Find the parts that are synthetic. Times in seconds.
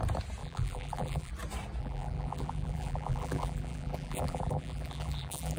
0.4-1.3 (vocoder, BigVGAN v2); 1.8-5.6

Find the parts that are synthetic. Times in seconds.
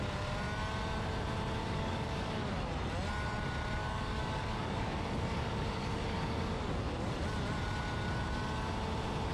1.6-2.5 (codec, DAC); 3.8-7.1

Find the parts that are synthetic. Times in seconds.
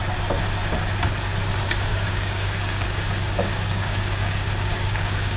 1.9-5.4 (codec, DAC)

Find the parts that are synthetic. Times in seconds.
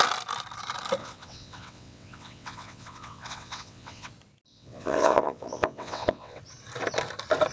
1.0-4.1 (vocoder, WaveNeXt); 4.5-6.4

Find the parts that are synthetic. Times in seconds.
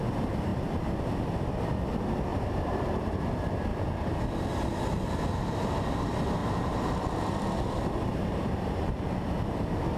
2.3-3.2 (vocoder, BigVGAN v2); 6.4-9.0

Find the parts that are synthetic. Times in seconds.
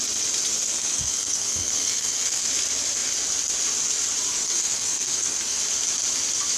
0.5-2.5 (codec, SNAC); 4.4-5.6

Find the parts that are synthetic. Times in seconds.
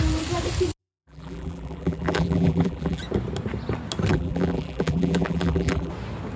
0.8-3.0 (vocoder, BigVGAN v2); 4.1-5.9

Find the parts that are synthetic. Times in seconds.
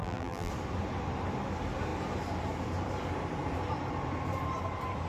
0.0-0.5 (vocoder, BigVGAN v2)